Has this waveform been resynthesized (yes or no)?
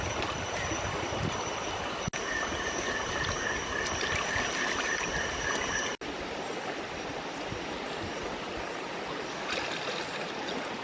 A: no